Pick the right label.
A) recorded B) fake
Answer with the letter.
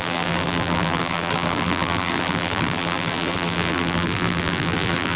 B